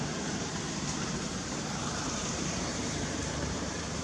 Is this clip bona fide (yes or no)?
no